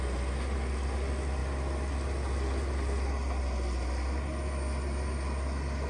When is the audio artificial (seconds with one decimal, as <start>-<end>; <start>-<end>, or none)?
none